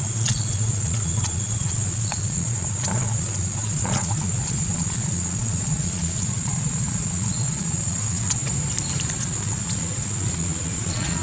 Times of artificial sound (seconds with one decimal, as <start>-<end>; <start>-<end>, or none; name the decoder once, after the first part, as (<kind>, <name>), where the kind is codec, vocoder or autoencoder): 0.0-8.4 (vocoder, Vocos); 9.1-11.2